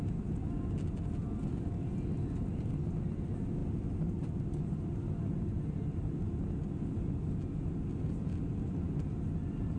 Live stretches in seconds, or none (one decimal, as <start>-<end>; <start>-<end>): 0.0-9.8

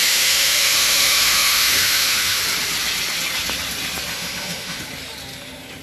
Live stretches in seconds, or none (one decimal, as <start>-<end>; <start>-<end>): 2.4-4.1; 4.8-5.8

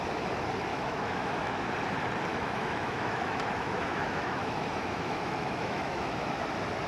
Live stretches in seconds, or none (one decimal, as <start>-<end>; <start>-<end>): 0.0-0.7; 1.7-2.3; 6.4-6.9

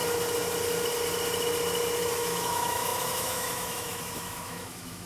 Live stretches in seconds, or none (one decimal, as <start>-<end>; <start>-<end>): 0.0-2.0

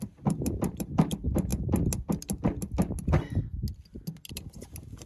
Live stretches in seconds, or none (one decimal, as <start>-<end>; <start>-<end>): 0.0-5.1

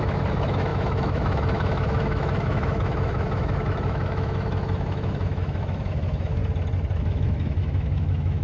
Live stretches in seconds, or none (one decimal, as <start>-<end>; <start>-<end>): 6.4-7.0

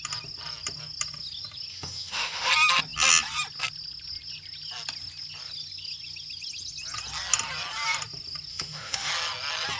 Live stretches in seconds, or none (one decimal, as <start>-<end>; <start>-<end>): 0.0-1.7; 2.5-8.5; 9.1-9.8

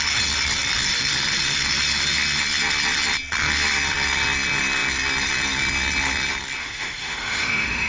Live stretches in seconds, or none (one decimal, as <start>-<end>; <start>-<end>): 0.0-6.6